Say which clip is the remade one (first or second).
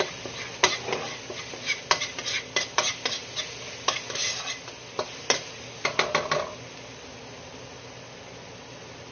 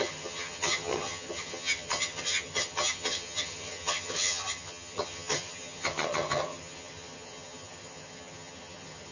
second